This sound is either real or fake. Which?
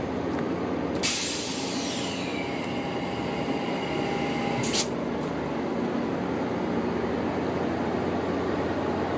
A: real